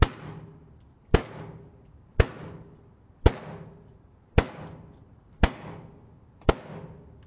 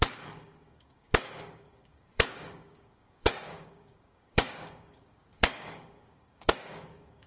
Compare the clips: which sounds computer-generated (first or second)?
second